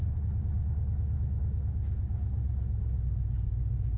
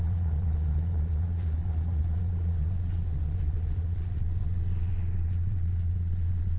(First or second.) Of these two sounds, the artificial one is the second